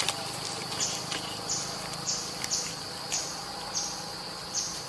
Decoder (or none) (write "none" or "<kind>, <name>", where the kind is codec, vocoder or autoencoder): none